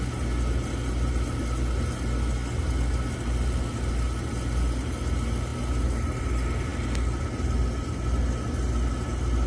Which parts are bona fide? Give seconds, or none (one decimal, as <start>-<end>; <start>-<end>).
0.0-9.5